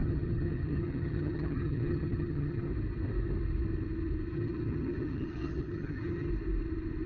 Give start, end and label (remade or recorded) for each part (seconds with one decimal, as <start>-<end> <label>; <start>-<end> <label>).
0.0-2.7 remade; 2.7-4.3 recorded; 4.3-6.3 remade; 6.3-7.1 recorded